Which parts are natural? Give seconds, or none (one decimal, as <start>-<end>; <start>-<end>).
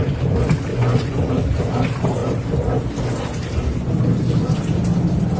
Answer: 0.0-0.7; 1.3-5.4